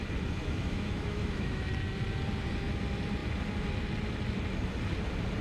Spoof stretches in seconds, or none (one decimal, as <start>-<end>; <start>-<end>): 0.4-1.7